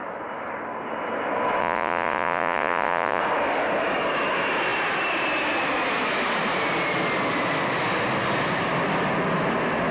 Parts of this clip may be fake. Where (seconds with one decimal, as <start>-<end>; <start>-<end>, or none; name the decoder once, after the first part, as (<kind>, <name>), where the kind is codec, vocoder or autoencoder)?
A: 1.6-3.2 (vocoder, Vocos)